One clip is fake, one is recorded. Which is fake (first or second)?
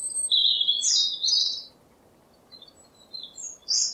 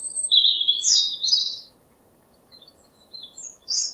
second